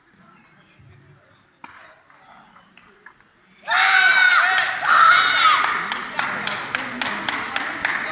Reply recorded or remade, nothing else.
recorded